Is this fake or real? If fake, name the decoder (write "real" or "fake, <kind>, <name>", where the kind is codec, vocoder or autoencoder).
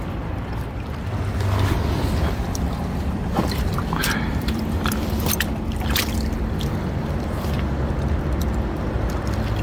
fake, vocoder, BigVGAN v2